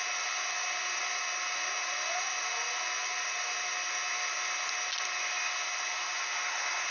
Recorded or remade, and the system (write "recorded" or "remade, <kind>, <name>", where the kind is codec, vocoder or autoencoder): recorded